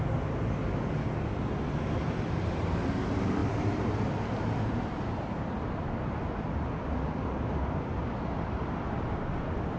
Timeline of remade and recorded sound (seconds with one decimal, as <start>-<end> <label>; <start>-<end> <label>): 0.0-9.8 recorded